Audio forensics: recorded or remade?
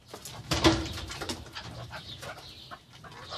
recorded